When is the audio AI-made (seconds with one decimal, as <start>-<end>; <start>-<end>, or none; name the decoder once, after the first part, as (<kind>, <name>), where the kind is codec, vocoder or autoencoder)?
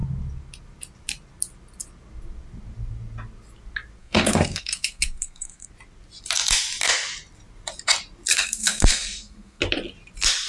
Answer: 4.0-5.7 (codec, SNAC); 8.3-9.6